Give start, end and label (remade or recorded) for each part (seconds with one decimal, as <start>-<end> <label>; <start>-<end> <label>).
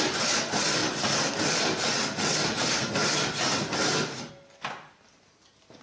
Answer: 0.0-5.8 recorded